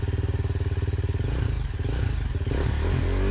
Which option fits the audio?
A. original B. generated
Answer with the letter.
A